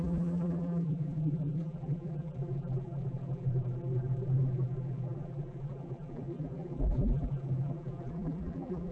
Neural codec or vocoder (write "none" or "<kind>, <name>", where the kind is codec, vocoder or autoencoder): vocoder, BigVGAN v2